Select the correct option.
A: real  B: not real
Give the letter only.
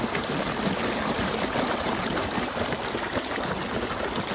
A